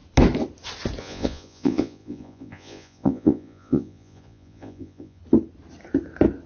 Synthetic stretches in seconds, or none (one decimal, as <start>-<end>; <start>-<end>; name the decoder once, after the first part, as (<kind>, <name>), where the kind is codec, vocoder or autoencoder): 1.0-5.2 (vocoder, Vocos)